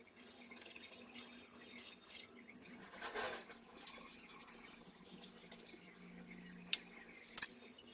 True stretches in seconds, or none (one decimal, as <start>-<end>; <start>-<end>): 2.8-7.5